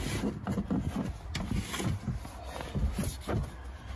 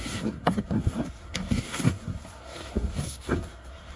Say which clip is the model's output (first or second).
second